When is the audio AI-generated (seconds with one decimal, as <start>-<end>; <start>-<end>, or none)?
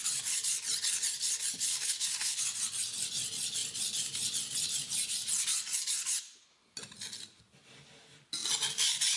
1.7-2.4